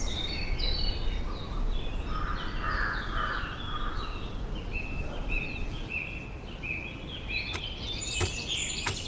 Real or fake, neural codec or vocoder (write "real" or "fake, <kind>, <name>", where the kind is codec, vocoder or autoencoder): real